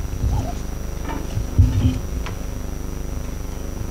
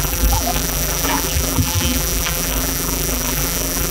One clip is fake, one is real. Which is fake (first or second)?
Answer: second